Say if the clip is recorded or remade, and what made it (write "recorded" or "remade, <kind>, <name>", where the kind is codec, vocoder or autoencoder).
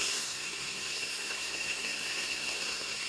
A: remade, codec, SNAC